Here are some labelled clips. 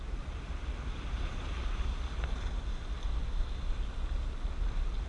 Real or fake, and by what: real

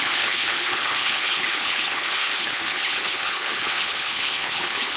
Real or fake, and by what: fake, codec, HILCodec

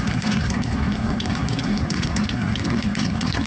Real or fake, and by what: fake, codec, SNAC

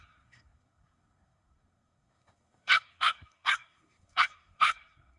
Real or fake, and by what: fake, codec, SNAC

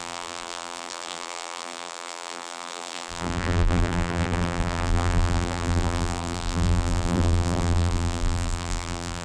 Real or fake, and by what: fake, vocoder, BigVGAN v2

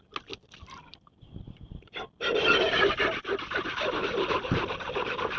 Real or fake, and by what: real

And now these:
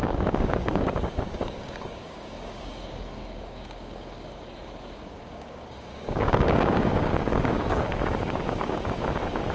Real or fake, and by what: fake, codec, DAC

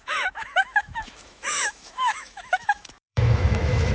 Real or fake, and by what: fake, autoencoder, DAC-VAE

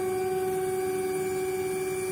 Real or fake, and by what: real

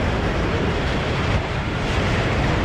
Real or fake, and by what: fake, vocoder, BigVGAN v2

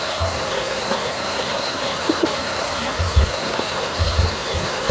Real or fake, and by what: fake, codec, SNAC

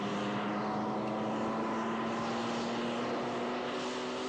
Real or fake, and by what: real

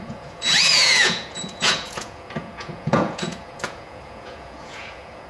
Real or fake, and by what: fake, vocoder, Vocos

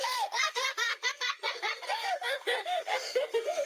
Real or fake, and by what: fake, codec, SNAC